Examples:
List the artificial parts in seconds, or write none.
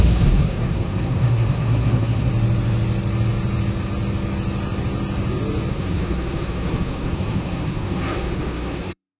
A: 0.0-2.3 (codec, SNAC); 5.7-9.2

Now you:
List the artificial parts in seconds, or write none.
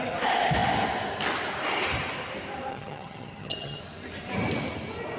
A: 2.7-3.8 (vocoder, HiFi-GAN)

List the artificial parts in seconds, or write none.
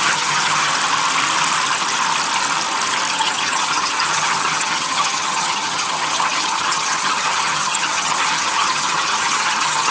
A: 0.0-0.7 (vocoder, HiFi-GAN); 3.1-9.9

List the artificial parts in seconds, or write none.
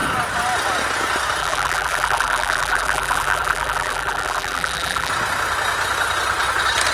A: 1.4-5.1 (vocoder, BigVGAN v2)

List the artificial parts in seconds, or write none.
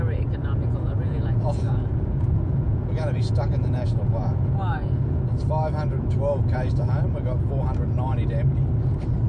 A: 0.4-5.2 (vocoder, Vocos)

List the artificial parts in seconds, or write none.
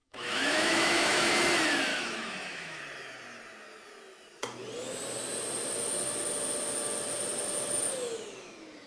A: 0.0-1.3 (autoencoder, DAC-VAE); 1.9-2.8